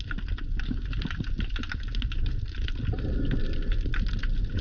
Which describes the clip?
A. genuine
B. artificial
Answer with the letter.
A